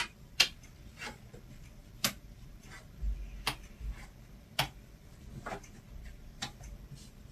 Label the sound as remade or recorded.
recorded